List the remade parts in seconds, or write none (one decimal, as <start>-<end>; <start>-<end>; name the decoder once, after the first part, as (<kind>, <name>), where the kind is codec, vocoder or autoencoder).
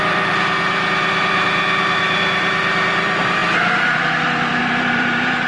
0.0-5.5 (vocoder, BigVGAN v2)